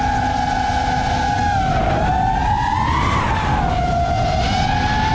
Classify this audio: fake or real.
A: real